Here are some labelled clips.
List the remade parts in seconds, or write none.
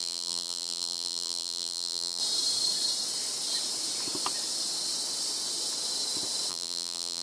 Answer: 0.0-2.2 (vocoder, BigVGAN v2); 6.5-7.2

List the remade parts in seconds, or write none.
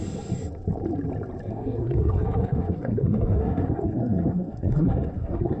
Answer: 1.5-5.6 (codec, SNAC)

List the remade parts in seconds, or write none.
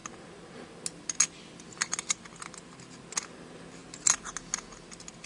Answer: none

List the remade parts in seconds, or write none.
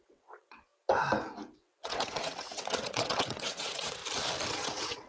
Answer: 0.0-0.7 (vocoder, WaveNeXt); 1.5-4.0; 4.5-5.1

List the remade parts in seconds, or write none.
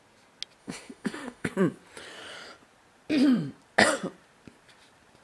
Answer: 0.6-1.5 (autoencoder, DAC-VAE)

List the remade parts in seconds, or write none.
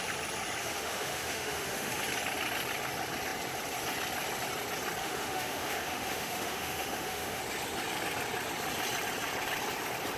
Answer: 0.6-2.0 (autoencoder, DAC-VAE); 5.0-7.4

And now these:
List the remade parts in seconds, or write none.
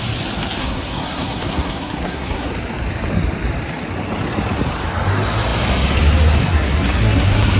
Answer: 0.6-2.5 (codec, SNAC); 6.4-7.6